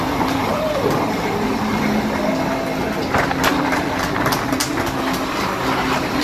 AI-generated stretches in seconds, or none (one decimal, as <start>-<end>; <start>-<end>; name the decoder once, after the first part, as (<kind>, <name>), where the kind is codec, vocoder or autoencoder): 0.5-1.8 (vocoder, BigVGAN v2)